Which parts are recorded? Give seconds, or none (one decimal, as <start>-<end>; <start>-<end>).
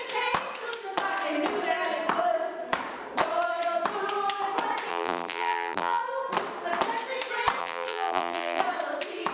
0.0-4.9; 6.0-7.6; 8.6-9.3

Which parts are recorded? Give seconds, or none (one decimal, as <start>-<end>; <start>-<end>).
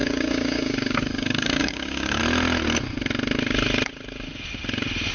2.2-5.1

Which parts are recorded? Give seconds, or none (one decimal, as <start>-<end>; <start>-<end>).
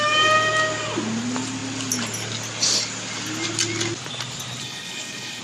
0.0-4.6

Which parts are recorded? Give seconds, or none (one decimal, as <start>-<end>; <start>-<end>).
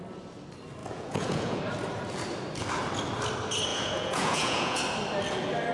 0.0-0.8; 1.6-3.7; 4.8-5.7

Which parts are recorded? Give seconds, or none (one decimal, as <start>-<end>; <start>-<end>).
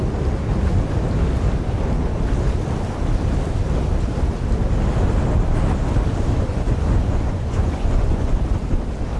0.0-6.5; 8.4-9.2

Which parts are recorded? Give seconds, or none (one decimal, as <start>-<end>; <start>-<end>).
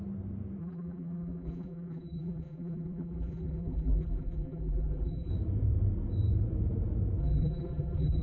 0.0-0.6; 5.3-7.2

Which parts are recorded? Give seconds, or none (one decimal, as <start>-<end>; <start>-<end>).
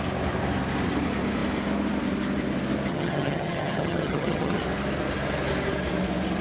0.0-2.9; 4.6-6.4